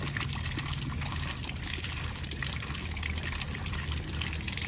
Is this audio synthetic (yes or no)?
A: no